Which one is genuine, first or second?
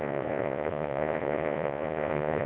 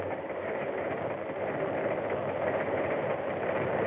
second